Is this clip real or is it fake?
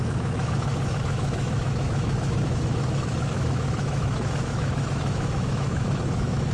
fake